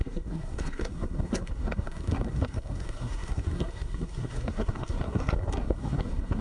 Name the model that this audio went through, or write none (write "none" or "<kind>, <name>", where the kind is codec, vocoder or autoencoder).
codec, SNAC